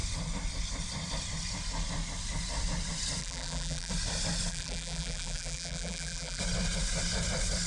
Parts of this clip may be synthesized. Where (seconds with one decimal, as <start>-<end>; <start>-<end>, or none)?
3.2-3.9; 4.5-6.4